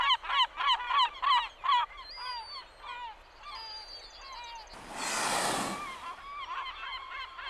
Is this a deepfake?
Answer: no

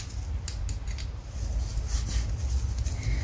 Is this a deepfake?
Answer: no